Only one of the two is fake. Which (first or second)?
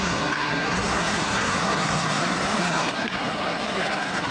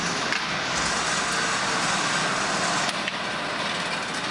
first